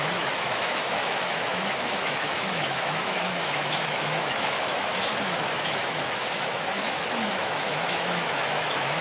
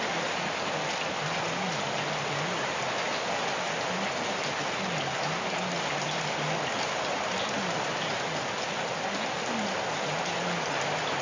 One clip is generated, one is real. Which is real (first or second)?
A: second